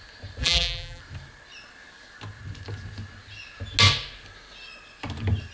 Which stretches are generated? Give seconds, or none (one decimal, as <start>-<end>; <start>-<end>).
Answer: 0.4-1.0